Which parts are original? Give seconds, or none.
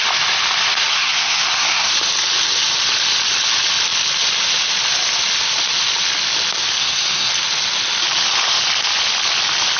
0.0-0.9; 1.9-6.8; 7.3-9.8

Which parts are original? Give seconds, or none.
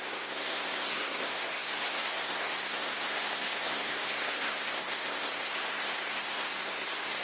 none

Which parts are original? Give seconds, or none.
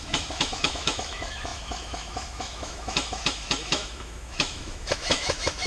none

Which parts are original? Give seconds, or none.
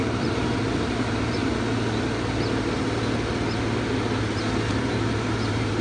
1.4-4.7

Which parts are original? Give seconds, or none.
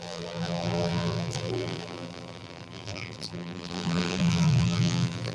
none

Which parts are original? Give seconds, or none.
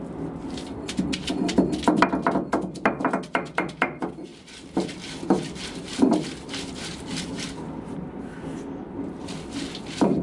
0.0-4.3; 5.8-10.2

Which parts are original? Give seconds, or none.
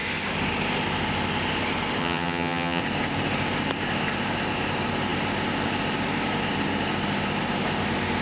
0.0-2.0; 2.8-8.2